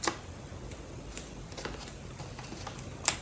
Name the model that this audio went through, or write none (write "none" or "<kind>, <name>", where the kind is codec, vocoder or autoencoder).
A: none